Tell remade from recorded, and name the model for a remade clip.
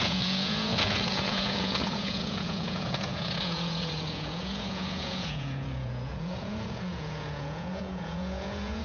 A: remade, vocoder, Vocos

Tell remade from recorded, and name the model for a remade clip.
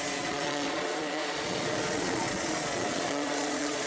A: remade, vocoder, Vocos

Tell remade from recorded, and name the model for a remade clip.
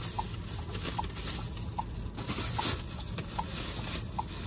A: recorded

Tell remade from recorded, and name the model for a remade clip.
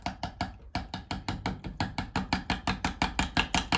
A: recorded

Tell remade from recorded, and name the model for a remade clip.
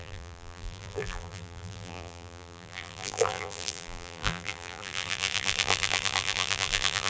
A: remade, vocoder, BigVGAN v2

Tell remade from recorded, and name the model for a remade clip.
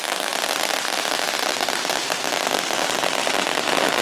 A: recorded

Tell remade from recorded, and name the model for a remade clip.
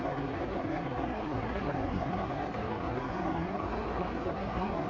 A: remade, codec, SNAC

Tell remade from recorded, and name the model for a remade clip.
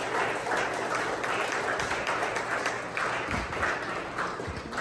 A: recorded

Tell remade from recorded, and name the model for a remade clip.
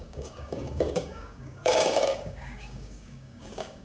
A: remade, codec, DAC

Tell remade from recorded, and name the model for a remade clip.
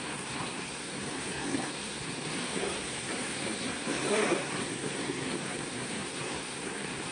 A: remade, codec, SNAC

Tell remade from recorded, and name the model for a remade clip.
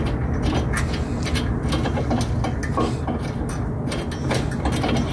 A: recorded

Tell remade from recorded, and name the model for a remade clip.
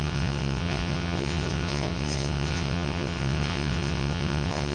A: remade, vocoder, WaveNeXt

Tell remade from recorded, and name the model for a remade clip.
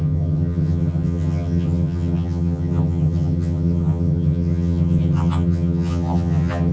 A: remade, vocoder, HiFi-GAN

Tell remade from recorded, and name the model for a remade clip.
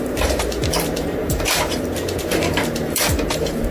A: remade, vocoder, BigVGAN v2